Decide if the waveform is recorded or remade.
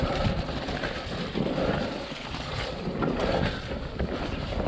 recorded